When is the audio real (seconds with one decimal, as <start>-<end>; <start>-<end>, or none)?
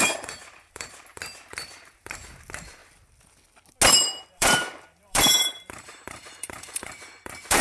2.8-4.3